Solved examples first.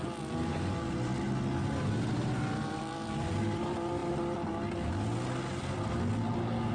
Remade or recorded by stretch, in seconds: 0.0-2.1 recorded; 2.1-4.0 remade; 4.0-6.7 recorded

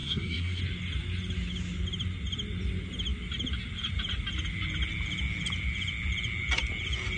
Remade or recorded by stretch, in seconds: 0.0-0.6 remade; 0.6-7.2 recorded

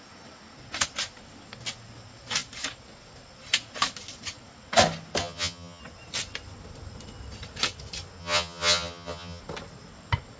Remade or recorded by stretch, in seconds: 0.0-5.2 recorded; 5.2-5.8 remade; 5.8-8.2 recorded; 8.2-9.4 remade; 9.4-10.4 recorded